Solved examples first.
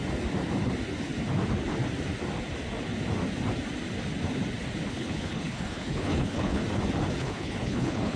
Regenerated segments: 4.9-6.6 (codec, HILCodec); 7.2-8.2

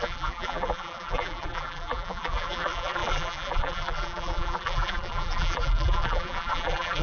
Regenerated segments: 0.0-7.0 (vocoder, BigVGAN v2)

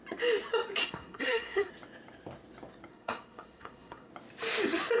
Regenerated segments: 0.8-1.7 (codec, SNAC); 2.9-4.1

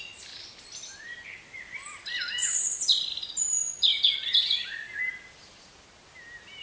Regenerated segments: 3.9-5.0 (vocoder, Vocos)

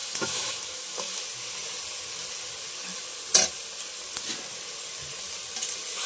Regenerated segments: 0.0-1.2 (autoencoder, DAC-VAE)

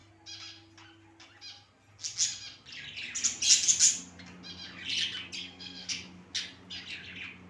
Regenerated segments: 5.4-5.9 (codec, SNAC)

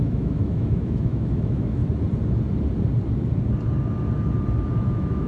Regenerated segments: 0.0-1.8 (autoencoder, DAC-VAE); 4.7-5.3

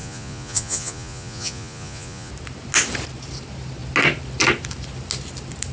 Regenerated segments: 0.0-2.3 (vocoder, Vocos)